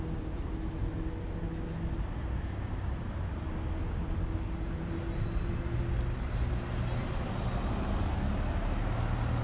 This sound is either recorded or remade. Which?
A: recorded